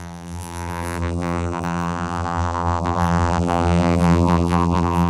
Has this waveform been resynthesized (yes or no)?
yes